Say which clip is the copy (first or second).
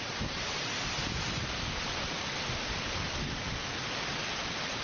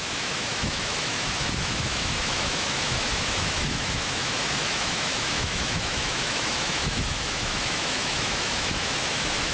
second